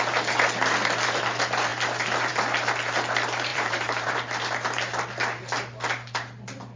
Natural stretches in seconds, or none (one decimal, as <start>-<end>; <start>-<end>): 0.0-3.5; 4.1-6.8